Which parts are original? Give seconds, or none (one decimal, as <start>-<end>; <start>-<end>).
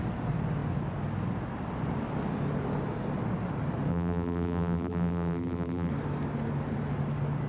0.0-3.9; 5.9-7.5